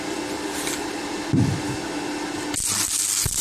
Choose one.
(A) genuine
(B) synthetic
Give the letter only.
A